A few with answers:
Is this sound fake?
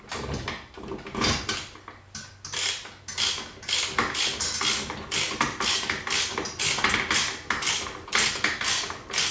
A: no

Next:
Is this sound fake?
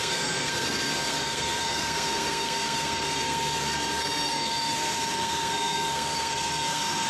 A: yes